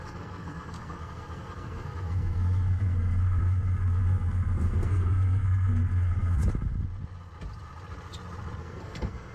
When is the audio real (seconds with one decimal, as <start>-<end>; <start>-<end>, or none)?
6.4-8.6